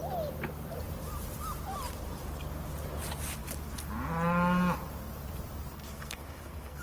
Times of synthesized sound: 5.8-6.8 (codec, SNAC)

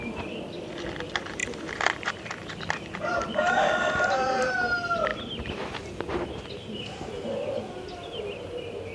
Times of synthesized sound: 1.4-4.5 (vocoder, BigVGAN v2)